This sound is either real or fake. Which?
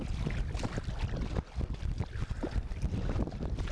real